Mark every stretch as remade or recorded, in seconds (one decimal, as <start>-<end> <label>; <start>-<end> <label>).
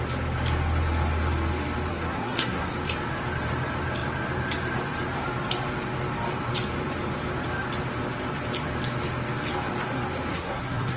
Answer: 0.0-1.9 recorded; 1.9-2.7 remade; 2.7-10.3 recorded; 10.3-11.0 remade